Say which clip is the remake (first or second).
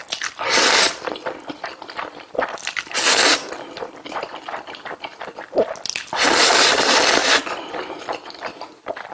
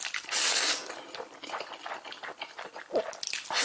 first